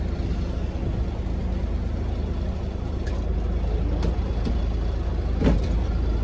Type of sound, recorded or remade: recorded